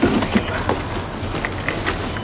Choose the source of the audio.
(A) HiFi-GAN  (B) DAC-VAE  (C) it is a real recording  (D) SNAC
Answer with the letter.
C